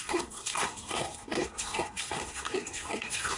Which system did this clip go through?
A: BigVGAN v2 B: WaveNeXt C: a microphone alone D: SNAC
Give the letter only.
D